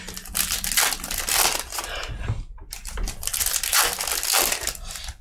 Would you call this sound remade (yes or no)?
no